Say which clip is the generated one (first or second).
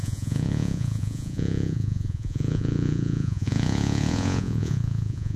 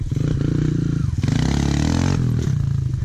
first